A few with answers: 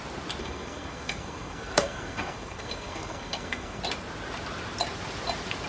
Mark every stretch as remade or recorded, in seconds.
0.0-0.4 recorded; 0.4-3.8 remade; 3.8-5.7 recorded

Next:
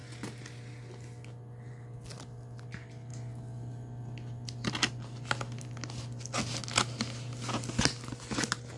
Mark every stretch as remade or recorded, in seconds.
0.0-8.8 recorded